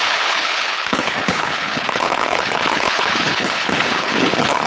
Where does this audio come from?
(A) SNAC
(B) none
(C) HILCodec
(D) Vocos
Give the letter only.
C